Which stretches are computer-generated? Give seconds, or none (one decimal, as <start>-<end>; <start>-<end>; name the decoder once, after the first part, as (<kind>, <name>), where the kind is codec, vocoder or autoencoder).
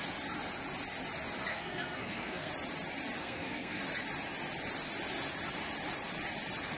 1.5-2.5 (codec, SNAC); 3.2-3.8